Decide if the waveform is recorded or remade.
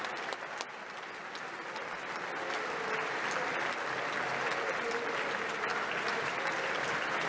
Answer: recorded